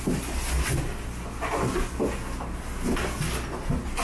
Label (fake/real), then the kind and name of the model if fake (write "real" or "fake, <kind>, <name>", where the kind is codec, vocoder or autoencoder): real